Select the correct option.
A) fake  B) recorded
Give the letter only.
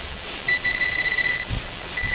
A